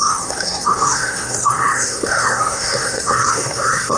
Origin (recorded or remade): remade